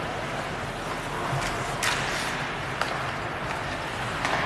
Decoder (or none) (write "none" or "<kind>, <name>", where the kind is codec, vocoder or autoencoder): none